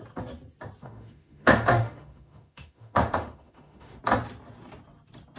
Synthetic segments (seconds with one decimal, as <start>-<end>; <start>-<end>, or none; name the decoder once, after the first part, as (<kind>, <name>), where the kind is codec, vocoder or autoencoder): 0.8-4.0 (autoencoder, DAC-VAE)